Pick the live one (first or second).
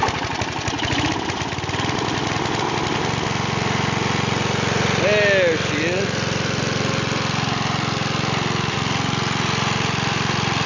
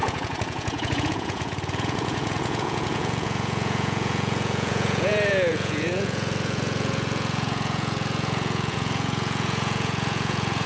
first